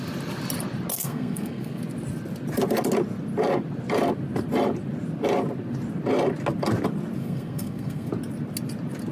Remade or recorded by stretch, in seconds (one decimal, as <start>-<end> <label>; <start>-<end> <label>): 0.0-0.9 recorded; 0.9-1.8 remade; 1.8-7.2 recorded; 7.2-8.1 remade; 8.1-9.1 recorded